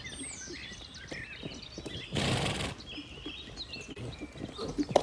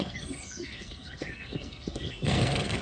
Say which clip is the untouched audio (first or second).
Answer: first